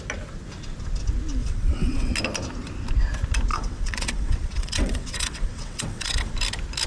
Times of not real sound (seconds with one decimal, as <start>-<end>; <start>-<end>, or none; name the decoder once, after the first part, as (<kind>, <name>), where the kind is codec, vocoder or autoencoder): 1.4-2.1 (vocoder, WaveNeXt); 3.5-6.3